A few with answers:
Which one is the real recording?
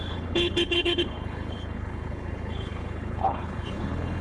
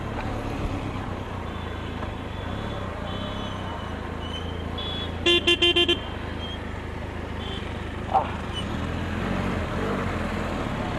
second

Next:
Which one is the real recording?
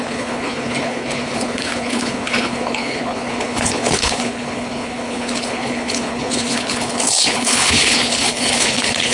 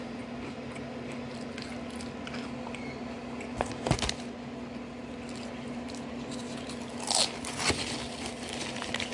second